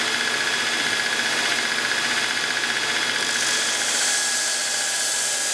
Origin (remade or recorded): recorded